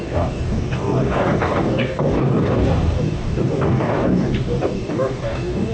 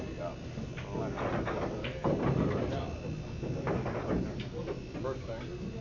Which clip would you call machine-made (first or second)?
first